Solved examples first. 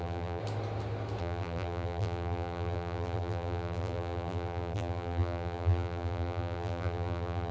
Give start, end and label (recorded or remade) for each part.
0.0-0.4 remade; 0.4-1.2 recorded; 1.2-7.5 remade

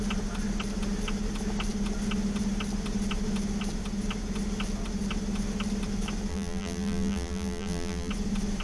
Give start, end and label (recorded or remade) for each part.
0.0-6.3 recorded; 6.3-8.1 remade; 8.1-8.6 recorded

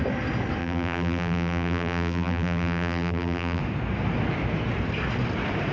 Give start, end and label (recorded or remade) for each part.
0.0-0.6 recorded; 0.6-3.6 remade; 3.6-5.7 recorded